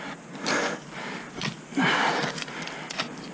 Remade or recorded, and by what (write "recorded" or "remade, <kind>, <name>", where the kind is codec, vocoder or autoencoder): recorded